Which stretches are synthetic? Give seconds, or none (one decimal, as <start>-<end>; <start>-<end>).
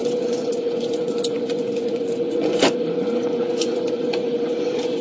0.0-5.0